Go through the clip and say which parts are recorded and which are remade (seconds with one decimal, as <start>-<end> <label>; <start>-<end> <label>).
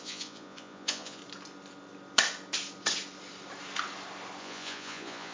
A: 0.0-1.2 remade; 1.2-4.4 recorded; 4.4-5.3 remade